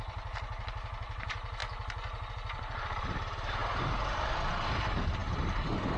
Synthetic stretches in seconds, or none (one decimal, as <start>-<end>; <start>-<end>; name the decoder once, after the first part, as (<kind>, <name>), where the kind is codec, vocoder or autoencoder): 0.0-3.6 (vocoder, BigVGAN v2); 4.5-6.0